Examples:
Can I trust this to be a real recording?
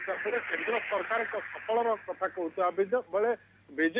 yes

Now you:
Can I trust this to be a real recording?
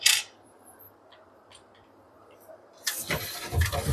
no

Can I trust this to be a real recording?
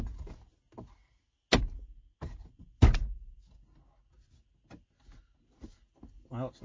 yes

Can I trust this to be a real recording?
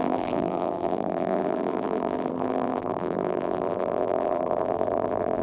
no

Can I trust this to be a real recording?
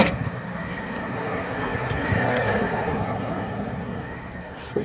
no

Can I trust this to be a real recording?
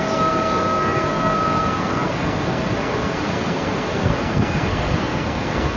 no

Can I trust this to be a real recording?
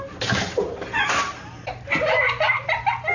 yes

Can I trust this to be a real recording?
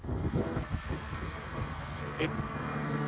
no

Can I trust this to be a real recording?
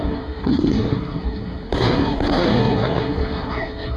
no